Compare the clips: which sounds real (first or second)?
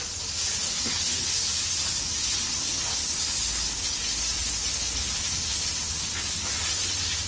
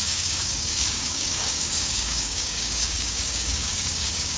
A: first